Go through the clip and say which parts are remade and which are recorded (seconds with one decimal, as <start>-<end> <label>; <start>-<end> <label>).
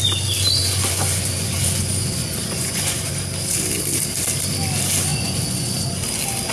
0.0-0.6 recorded; 0.6-3.1 remade; 3.1-5.1 recorded; 5.1-5.7 remade; 5.7-6.5 recorded